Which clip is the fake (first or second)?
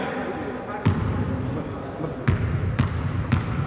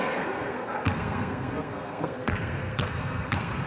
second